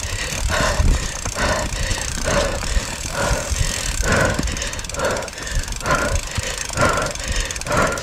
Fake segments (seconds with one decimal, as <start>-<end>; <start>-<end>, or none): 1.9-3.6